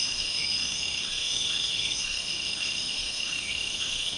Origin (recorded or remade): remade